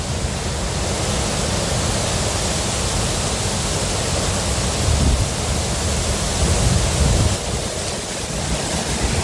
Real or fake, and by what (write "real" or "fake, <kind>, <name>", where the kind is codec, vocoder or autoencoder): real